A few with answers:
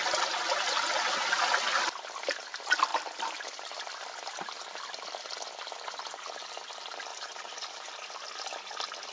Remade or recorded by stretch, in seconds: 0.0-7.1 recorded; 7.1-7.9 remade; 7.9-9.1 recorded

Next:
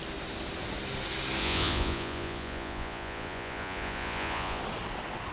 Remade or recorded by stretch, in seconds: 0.0-1.4 recorded; 1.4-4.6 remade; 4.6-5.3 recorded

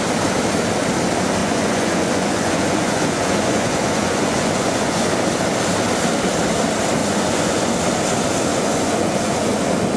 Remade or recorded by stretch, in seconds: 0.0-1.4 recorded; 1.4-5.1 remade; 5.1-7.0 recorded; 7.0-7.7 remade; 7.7-8.5 recorded; 8.5-9.6 remade; 9.6-10.0 recorded

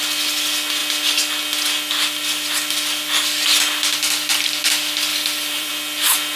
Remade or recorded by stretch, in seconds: 0.0-5.1 recorded; 5.1-5.7 remade; 5.7-6.4 recorded

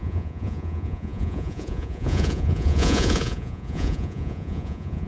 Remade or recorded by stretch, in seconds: 0.0-5.1 remade

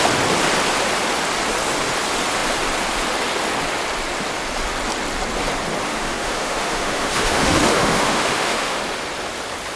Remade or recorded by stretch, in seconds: 0.0-5.9 recorded; 5.9-8.8 remade; 8.8-9.8 recorded